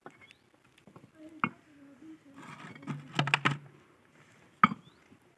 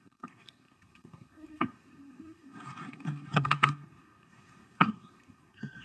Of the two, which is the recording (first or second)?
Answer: first